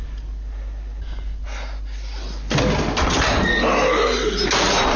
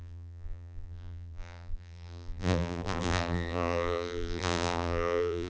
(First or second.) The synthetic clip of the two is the second